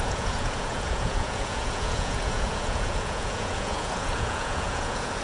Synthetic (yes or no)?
yes